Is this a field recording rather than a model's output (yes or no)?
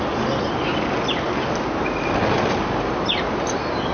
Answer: yes